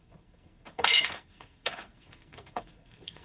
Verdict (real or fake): fake